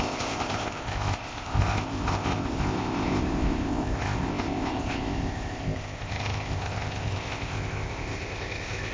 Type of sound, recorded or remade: remade